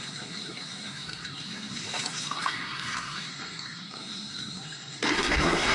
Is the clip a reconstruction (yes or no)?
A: yes